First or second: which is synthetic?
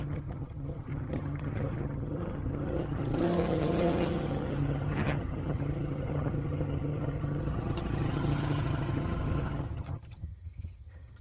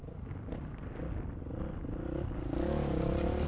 first